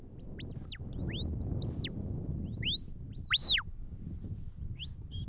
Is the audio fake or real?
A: real